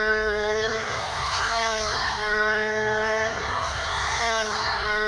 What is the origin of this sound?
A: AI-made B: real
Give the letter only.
A